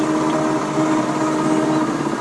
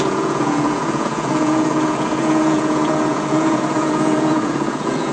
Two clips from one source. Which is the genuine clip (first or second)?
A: first